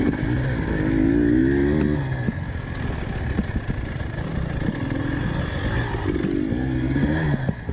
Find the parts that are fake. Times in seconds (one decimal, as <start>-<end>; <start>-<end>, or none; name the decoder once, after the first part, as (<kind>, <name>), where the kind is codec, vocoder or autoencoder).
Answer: none